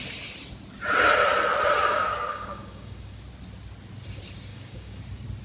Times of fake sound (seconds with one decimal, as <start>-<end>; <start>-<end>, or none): 1.8-3.2; 4.5-5.0